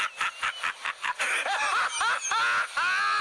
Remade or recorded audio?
recorded